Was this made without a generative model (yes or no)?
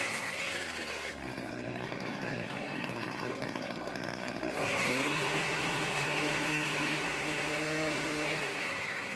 no